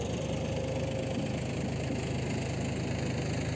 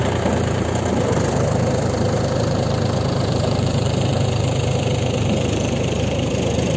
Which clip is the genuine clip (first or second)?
first